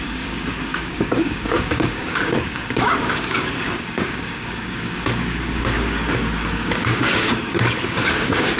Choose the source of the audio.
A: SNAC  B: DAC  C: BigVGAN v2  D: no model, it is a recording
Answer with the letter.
B